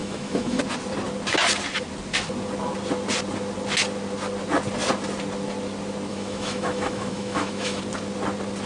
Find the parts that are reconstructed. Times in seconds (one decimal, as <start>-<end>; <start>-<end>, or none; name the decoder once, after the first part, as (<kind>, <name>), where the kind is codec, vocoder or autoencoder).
0.0-0.6 (autoencoder, DAC-VAE); 6.1-7.8